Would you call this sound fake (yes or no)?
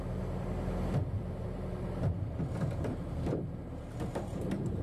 yes